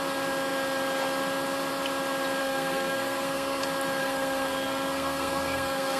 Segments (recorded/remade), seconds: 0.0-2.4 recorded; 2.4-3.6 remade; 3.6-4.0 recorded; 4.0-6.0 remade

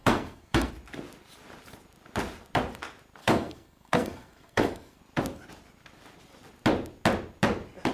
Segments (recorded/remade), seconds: 0.0-0.7 remade; 0.7-3.2 recorded; 3.2-5.0 remade; 5.0-7.9 recorded

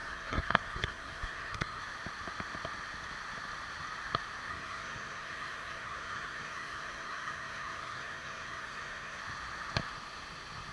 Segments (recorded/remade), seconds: 0.0-1.8 remade; 1.8-4.5 recorded; 4.5-9.2 remade; 9.2-10.7 recorded

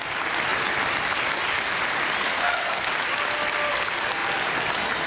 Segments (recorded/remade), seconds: 0.0-2.3 recorded; 2.3-2.9 remade; 2.9-5.1 recorded

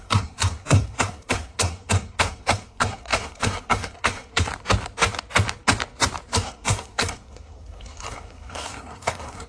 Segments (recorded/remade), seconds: 0.0-4.5 remade; 4.5-6.3 recorded; 6.3-9.5 remade

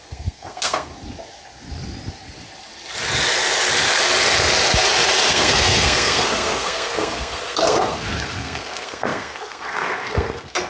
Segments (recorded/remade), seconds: 0.0-0.9 remade; 0.9-5.3 recorded; 5.3-10.7 remade

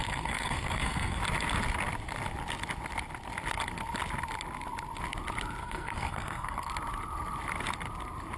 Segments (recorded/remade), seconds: 0.0-1.2 remade; 1.2-5.6 recorded; 5.6-6.7 remade; 6.7-8.4 recorded

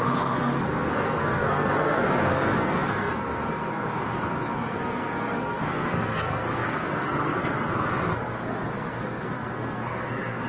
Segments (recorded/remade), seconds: 0.0-10.5 remade